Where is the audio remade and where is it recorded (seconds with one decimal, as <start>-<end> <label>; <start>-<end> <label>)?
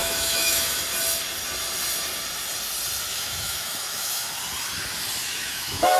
0.0-0.8 remade; 0.8-3.1 recorded; 3.1-4.3 remade; 4.3-5.2 recorded; 5.2-6.0 remade